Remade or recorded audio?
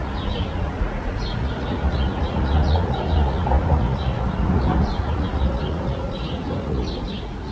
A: remade